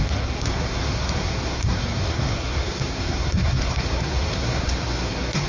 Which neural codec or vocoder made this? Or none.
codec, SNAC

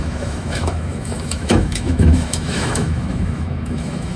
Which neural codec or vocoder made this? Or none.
autoencoder, DAC-VAE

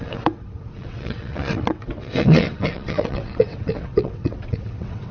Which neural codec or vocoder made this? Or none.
vocoder, WaveNeXt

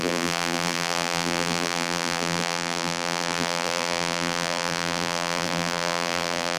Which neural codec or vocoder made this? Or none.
vocoder, BigVGAN v2